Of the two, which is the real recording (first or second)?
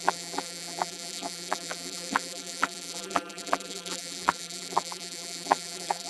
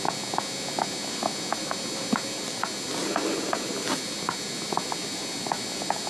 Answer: second